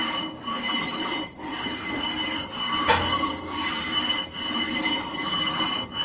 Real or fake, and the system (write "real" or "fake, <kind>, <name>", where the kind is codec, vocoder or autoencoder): real